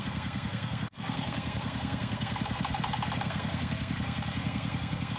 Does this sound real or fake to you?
fake